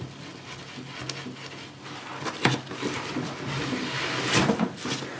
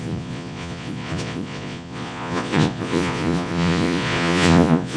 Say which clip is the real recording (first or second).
first